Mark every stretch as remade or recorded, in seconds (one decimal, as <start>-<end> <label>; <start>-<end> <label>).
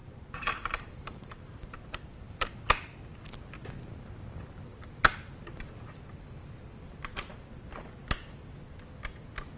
0.0-2.5 remade; 2.5-9.6 recorded